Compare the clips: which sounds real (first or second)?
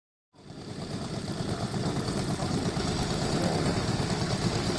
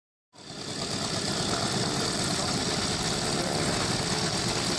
second